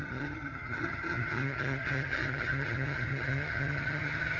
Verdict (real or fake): fake